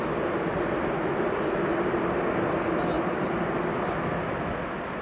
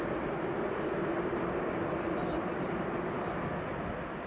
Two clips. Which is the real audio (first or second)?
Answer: first